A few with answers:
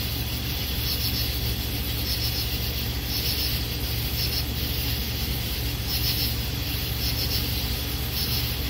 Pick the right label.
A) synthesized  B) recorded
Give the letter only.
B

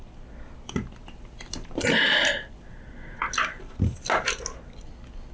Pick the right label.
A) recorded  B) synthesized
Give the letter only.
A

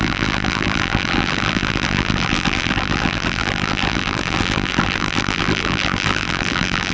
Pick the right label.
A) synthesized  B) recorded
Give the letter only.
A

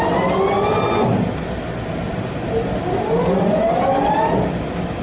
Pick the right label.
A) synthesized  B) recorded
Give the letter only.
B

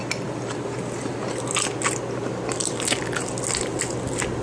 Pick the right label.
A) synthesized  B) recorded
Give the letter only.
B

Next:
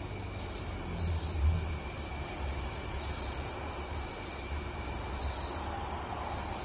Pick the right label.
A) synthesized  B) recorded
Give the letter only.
A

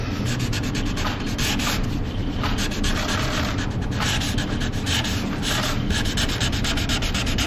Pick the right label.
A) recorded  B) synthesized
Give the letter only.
B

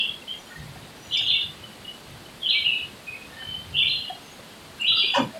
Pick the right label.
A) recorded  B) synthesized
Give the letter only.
B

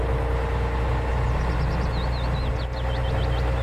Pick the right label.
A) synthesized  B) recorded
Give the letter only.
B